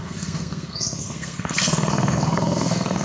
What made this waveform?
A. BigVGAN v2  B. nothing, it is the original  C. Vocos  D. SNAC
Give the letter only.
D